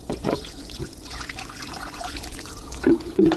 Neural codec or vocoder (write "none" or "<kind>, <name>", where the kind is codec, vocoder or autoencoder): vocoder, Vocos